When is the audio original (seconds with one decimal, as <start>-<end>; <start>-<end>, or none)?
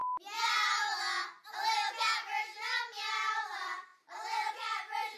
0.0-3.1; 3.9-4.5